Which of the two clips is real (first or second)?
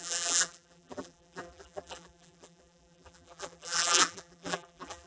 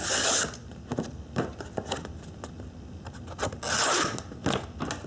second